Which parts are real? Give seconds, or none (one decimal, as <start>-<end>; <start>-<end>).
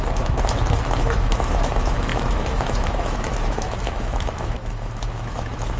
none